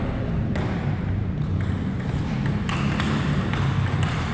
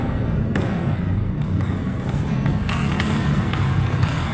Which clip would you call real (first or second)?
first